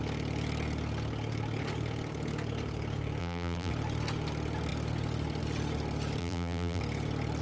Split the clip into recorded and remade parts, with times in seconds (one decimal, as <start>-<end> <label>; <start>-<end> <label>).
0.0-3.2 recorded; 3.2-3.7 remade; 3.7-6.2 recorded; 6.2-6.8 remade; 6.8-7.4 recorded